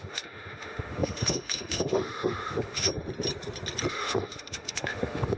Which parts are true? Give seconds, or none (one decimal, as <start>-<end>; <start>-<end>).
2.9-3.9